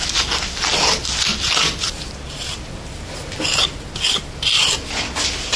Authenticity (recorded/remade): recorded